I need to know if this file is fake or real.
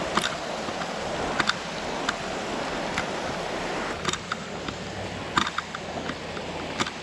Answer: real